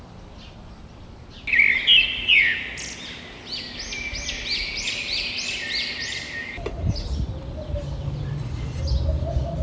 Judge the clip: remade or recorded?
recorded